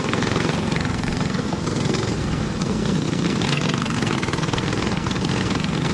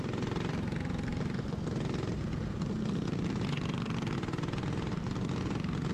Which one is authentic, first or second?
second